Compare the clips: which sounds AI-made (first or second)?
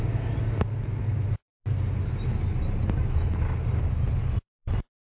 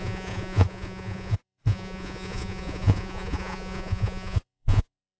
second